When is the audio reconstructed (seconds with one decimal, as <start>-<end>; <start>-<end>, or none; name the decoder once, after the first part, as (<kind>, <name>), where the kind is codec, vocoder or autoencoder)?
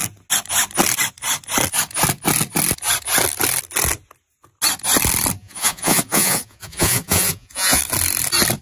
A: 5.4-7.8 (vocoder, Vocos)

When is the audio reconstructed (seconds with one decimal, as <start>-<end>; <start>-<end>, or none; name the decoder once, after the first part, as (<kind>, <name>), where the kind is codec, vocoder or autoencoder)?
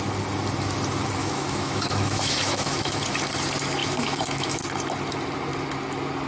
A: 1.2-3.0 (autoencoder, DAC-VAE); 3.8-4.6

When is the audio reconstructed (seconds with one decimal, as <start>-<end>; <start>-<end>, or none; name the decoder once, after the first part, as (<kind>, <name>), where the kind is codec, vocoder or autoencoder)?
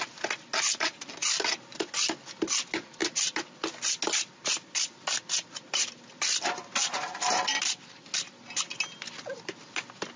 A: none